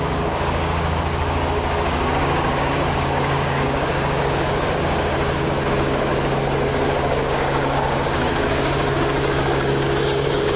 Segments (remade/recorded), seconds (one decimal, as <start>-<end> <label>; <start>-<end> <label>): 0.0-6.1 remade; 6.1-6.7 recorded; 6.7-10.6 remade